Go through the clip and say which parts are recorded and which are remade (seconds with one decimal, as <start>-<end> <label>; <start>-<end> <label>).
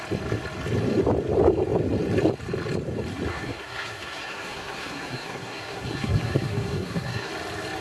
0.0-3.3 recorded; 3.3-7.3 remade; 7.3-7.8 recorded